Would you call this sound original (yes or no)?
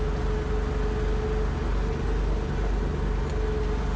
yes